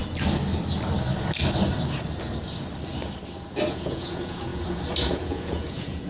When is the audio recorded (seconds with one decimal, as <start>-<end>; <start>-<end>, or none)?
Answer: 0.0-3.7